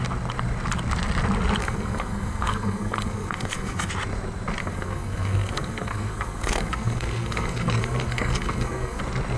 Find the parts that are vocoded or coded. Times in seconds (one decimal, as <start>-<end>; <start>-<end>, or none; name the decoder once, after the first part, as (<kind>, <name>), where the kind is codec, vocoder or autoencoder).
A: 1.6-3.9 (codec, SNAC); 4.6-9.0